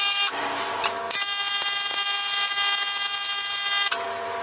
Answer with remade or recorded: recorded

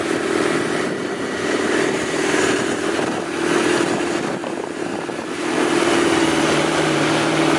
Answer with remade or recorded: remade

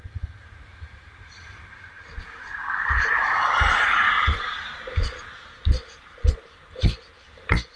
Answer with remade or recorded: remade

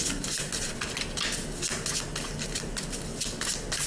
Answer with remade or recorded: recorded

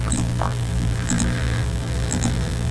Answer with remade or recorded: remade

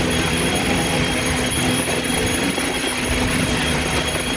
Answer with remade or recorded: remade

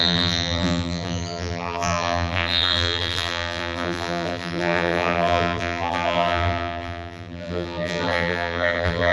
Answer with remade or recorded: remade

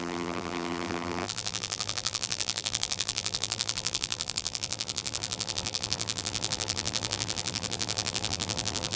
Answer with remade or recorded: remade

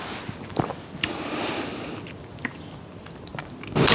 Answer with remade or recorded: recorded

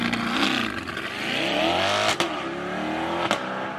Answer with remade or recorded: recorded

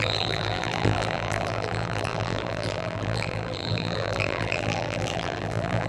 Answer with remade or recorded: remade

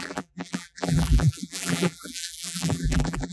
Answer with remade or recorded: remade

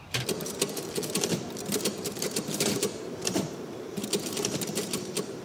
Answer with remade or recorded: remade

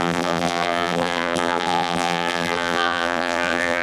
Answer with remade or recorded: remade